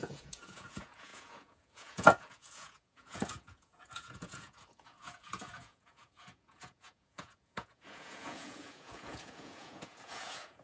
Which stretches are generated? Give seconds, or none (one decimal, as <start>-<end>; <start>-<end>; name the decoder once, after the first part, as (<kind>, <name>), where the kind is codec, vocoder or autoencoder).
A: 0.0-10.6 (vocoder, Vocos)